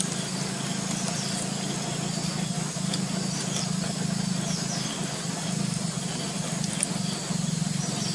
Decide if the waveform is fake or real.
real